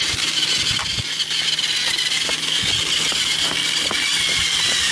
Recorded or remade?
recorded